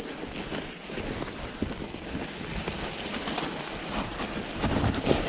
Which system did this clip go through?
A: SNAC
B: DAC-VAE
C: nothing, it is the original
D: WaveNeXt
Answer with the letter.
C